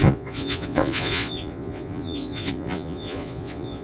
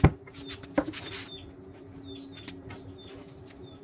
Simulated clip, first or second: first